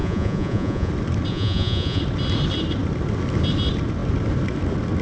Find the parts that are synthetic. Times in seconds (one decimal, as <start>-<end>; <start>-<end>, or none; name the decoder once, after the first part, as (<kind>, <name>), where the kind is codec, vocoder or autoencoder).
0.0-0.9 (vocoder, Vocos); 1.3-2.0